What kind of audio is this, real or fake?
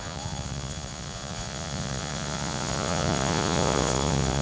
fake